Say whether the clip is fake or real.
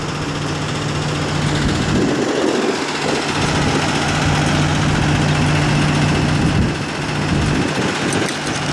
real